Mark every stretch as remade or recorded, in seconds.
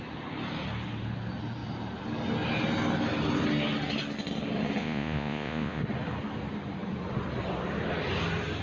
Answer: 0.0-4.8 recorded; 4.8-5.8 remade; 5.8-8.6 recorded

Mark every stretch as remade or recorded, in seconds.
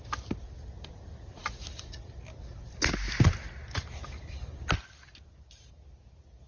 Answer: 0.0-6.5 recorded